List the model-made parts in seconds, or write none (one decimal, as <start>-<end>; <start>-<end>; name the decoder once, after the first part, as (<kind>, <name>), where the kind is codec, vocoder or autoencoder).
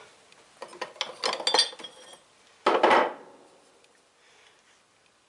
none